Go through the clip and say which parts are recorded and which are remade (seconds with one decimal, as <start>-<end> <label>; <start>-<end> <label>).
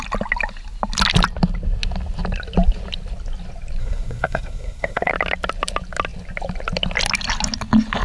0.0-3.8 recorded; 3.8-5.1 remade; 5.1-8.0 recorded